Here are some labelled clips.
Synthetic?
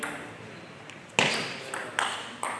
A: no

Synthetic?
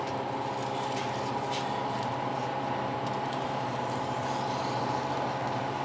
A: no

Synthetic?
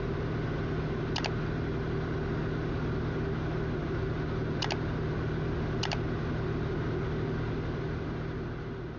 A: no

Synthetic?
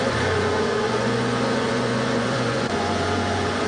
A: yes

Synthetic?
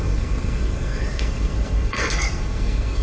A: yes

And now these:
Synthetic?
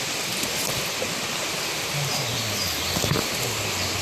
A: no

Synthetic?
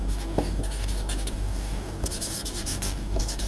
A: yes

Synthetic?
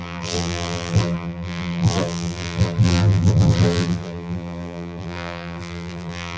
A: yes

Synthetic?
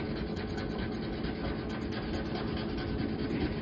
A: no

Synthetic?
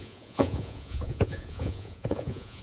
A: yes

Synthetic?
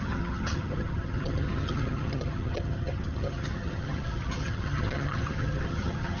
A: yes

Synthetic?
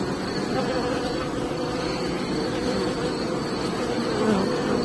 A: no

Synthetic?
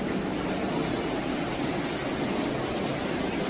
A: no